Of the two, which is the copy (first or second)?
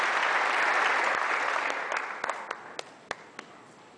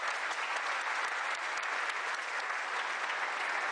second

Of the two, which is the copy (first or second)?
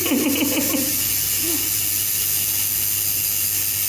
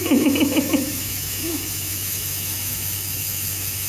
second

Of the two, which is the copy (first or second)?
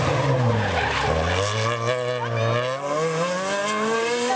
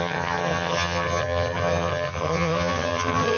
second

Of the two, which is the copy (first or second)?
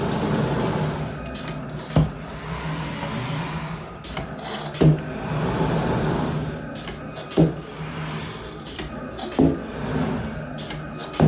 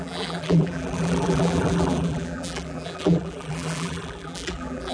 second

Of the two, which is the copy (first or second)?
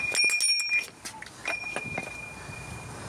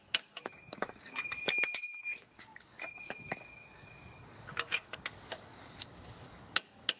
second